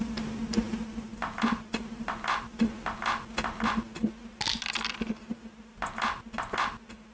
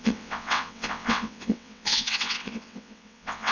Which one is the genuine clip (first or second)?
first